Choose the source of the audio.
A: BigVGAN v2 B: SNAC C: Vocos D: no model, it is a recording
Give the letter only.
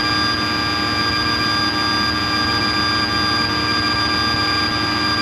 D